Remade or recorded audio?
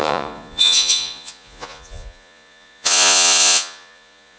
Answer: remade